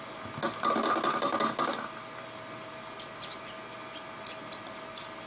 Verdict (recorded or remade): recorded